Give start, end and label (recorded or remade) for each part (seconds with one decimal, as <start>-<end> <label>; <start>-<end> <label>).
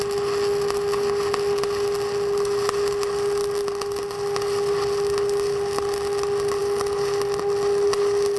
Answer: 0.0-8.4 recorded